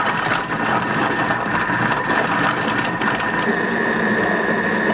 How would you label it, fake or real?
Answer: real